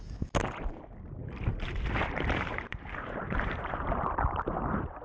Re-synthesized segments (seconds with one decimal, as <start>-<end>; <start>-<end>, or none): 1.2-4.1